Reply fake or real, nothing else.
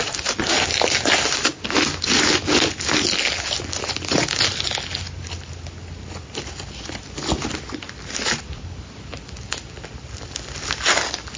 real